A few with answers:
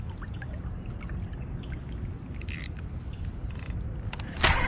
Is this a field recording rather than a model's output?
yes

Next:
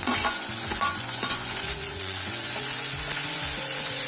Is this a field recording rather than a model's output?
no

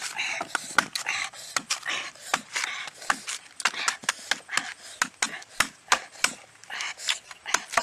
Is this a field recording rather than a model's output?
yes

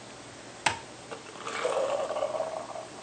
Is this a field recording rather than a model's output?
yes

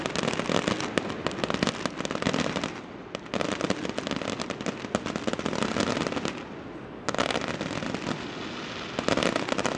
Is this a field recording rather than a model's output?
yes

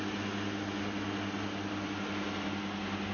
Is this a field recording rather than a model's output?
yes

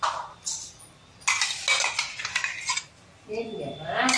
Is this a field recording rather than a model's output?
yes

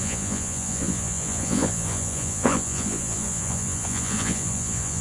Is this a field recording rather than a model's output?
no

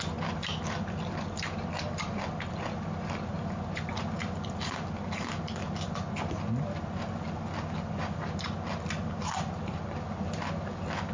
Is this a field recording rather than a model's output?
yes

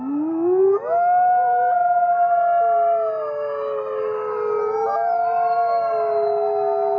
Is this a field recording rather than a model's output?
yes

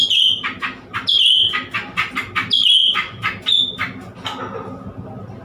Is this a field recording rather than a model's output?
yes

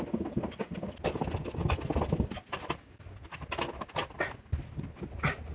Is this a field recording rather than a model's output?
yes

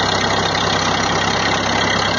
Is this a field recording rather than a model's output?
yes